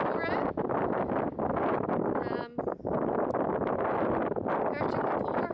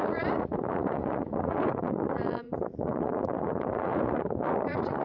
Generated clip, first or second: second